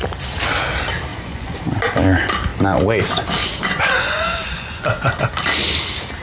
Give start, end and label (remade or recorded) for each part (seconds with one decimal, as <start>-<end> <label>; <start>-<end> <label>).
0.0-1.1 recorded; 1.1-1.6 remade; 1.6-3.4 recorded; 3.4-5.2 remade; 5.2-6.2 recorded